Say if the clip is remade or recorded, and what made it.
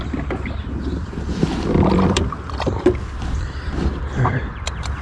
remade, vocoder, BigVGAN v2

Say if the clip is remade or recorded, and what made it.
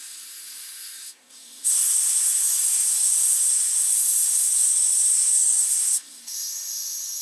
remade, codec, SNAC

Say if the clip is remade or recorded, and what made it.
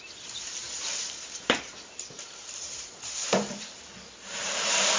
remade, vocoder, BigVGAN v2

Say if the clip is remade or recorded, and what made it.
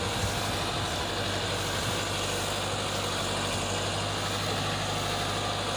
recorded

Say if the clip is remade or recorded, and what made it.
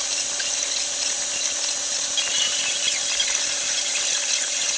recorded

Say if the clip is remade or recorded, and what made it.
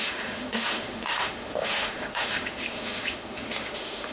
remade, autoencoder, DAC-VAE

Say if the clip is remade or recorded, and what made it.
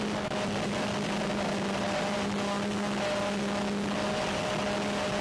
recorded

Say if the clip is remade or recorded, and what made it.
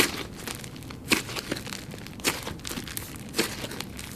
recorded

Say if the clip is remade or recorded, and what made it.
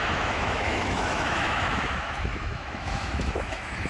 remade, autoencoder, DAC-VAE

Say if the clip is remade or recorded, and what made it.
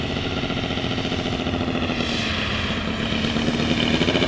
recorded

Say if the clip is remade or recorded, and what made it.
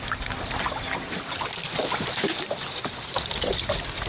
recorded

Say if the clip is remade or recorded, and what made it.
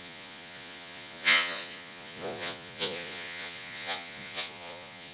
remade, vocoder, Vocos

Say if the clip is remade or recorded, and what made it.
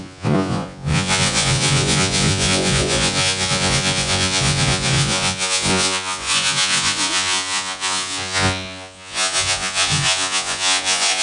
remade, vocoder, Vocos